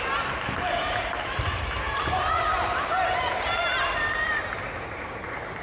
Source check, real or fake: fake